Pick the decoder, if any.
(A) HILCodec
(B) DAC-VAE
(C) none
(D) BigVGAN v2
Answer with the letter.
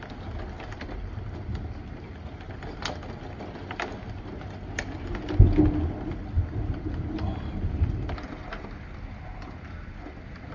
C